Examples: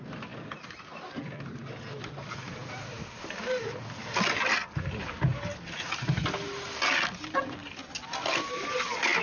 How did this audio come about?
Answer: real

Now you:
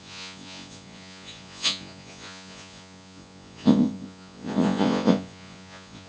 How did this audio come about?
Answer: fake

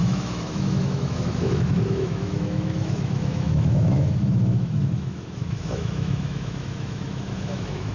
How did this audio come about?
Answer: fake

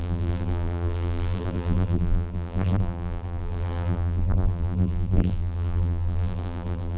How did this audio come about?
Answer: fake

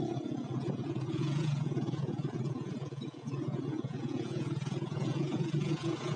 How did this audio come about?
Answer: fake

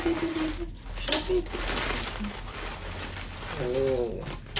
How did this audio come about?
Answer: real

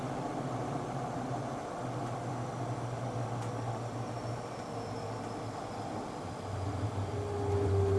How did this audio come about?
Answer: real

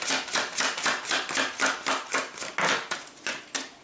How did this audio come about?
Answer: real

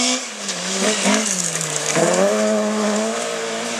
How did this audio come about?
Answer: fake